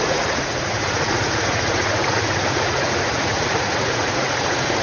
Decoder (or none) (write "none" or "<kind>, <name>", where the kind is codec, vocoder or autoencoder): vocoder, Vocos